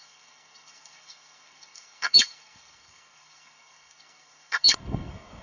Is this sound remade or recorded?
remade